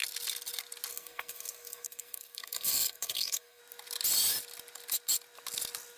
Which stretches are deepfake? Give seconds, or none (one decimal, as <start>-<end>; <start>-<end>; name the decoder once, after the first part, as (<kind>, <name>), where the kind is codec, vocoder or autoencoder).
0.9-3.6 (codec, SNAC)